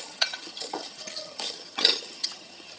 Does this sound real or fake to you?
fake